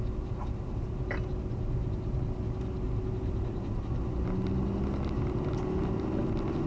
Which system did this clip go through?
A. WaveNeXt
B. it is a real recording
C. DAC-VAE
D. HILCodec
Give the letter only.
B